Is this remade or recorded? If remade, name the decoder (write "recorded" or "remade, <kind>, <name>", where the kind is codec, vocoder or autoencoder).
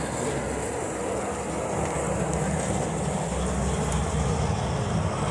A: recorded